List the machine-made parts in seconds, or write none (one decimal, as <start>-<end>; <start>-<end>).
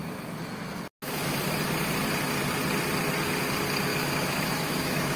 3.9-5.2